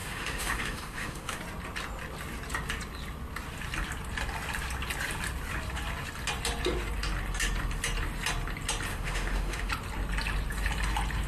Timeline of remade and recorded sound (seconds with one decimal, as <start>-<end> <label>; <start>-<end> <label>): 0.0-1.4 remade; 1.4-8.9 recorded; 8.9-9.7 remade; 9.7-11.3 recorded